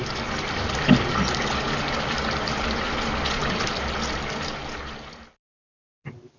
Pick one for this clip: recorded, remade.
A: remade